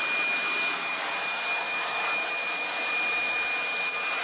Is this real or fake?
real